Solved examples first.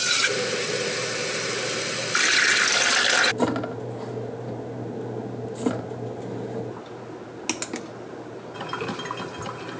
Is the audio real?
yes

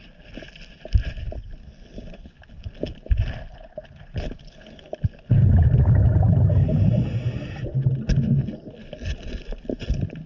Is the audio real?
yes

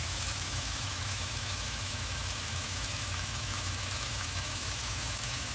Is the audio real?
no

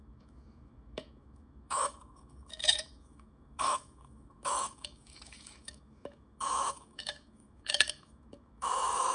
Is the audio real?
no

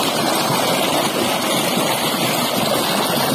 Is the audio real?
yes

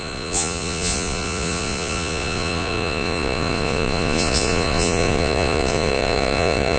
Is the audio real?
no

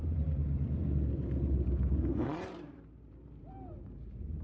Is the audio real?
no